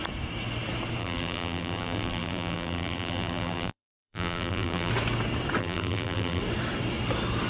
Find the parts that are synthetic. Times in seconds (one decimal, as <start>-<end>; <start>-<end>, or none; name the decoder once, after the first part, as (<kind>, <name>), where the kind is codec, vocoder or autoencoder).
1.0-4.9 (vocoder, BigVGAN v2); 5.6-6.4